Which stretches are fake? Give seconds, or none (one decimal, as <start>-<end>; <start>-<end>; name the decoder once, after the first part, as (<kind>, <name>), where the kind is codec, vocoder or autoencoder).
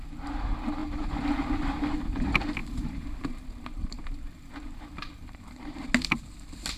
0.8-1.8 (vocoder, BigVGAN v2); 2.6-5.9